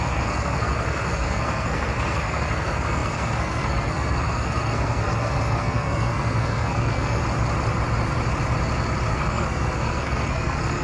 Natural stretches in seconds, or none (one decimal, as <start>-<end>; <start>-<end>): 7.2-9.1